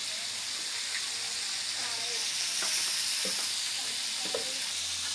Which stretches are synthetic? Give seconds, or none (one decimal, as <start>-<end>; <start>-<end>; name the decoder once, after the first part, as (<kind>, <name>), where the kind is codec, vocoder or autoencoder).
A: none